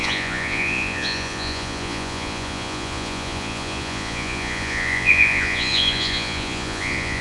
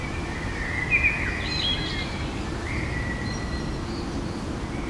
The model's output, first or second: first